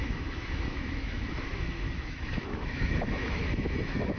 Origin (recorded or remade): remade